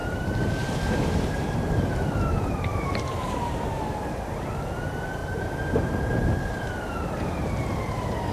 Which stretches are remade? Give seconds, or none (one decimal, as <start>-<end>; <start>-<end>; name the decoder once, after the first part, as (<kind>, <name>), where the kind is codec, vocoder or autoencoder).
0.0-4.2 (vocoder, BigVGAN v2); 5.2-8.3